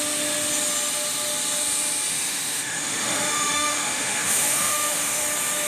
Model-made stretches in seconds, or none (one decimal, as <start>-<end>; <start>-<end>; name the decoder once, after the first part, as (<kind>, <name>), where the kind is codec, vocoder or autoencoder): 2.1-5.2 (autoencoder, DAC-VAE)

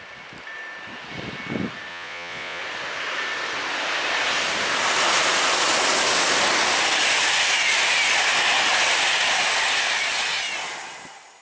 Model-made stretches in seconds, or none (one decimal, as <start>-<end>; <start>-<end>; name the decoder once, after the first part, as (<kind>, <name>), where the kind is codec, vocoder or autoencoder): 1.9-2.6 (vocoder, Vocos)

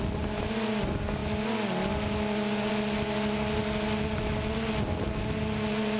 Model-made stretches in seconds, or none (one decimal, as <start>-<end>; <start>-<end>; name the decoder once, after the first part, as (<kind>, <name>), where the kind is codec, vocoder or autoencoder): none

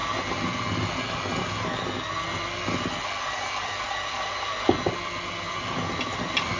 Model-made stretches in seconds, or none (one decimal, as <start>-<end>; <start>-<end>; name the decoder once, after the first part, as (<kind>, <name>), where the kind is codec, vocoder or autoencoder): none

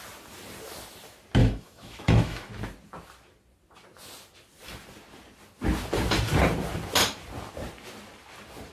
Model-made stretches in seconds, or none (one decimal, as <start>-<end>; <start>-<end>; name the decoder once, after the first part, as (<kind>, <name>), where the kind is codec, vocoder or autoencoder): 1.4-2.5 (autoencoder, DAC-VAE)

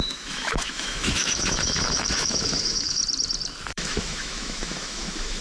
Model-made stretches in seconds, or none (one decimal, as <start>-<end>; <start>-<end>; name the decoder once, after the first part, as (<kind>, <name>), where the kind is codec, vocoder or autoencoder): 0.0-3.0 (autoencoder, DAC-VAE); 3.7-5.4

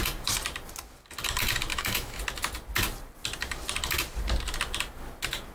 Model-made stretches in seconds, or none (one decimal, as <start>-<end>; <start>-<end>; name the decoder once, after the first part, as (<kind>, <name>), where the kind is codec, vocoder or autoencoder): 1.7-2.2 (autoencoder, DAC-VAE)